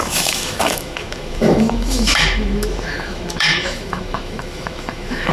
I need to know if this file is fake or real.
fake